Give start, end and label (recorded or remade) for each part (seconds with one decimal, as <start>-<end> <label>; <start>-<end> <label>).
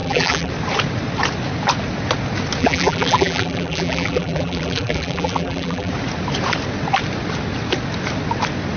0.0-0.5 remade; 0.5-2.6 recorded; 2.6-5.9 remade; 5.9-8.8 recorded